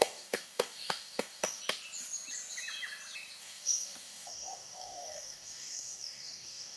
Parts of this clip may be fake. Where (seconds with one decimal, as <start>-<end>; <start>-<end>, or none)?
0.0-1.6; 3.4-6.8